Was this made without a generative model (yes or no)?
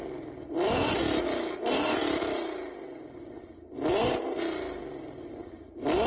yes